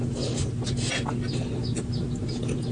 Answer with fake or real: real